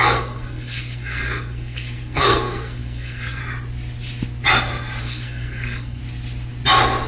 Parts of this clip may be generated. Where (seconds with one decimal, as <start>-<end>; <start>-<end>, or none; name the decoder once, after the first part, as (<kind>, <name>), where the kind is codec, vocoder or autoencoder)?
0.0-3.4 (codec, SNAC); 5.0-6.0